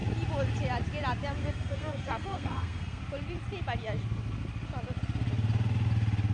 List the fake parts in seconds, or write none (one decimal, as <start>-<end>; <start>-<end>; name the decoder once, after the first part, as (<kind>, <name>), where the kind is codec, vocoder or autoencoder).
1.4-3.0 (codec, SNAC)